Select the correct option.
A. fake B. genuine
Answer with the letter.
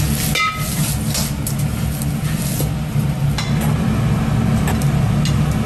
B